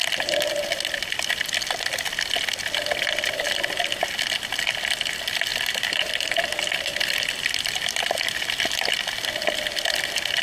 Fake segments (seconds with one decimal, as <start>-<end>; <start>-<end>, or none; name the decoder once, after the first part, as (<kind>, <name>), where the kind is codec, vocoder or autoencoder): 5.5-8.1 (vocoder, BigVGAN v2)